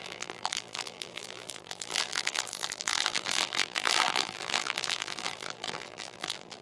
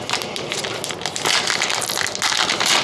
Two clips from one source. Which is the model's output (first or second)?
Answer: first